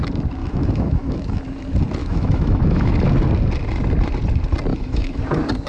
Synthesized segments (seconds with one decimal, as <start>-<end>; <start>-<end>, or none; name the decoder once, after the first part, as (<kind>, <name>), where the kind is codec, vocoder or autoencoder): 0.4-1.4 (autoencoder, DAC-VAE); 2.0-2.9; 4.7-5.2

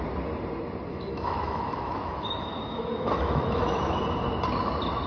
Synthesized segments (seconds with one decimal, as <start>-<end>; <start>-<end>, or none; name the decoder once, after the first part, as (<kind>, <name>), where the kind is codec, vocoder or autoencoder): 0.9-4.0 (autoencoder, DAC-VAE)

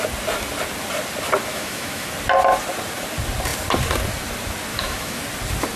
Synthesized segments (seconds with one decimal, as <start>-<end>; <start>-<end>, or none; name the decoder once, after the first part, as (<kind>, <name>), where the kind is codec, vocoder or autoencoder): 1.5-2.1 (autoencoder, DAC-VAE); 4.7-5.2